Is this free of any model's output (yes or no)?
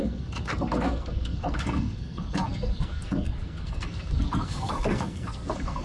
no